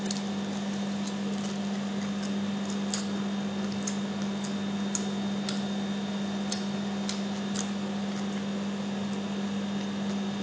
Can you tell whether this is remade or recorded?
recorded